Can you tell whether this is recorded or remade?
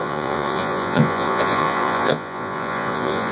remade